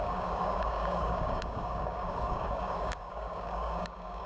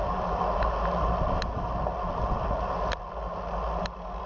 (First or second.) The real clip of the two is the second